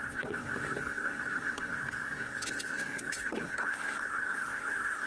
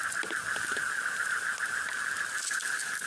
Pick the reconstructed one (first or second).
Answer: first